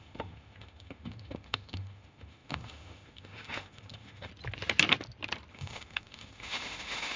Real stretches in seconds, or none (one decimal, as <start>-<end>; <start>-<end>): 4.3-5.5